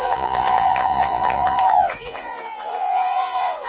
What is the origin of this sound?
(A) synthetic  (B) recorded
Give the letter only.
A